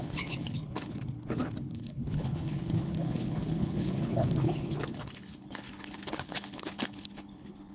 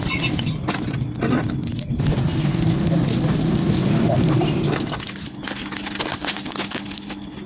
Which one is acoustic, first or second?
second